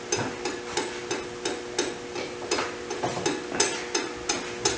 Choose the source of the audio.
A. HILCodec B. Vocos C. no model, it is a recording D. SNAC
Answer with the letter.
C